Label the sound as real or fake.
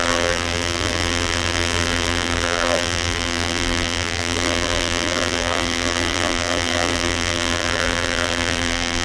fake